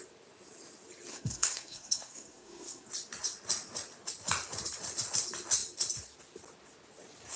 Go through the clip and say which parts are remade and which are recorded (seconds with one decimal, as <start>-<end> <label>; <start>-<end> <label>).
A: 0.0-1.1 recorded; 1.1-2.9 remade; 2.9-7.4 recorded